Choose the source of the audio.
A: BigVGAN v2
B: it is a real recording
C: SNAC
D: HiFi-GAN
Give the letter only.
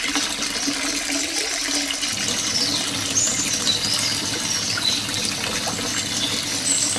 B